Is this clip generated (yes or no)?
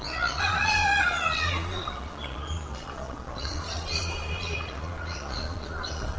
yes